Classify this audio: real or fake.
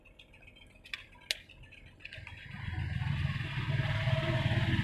real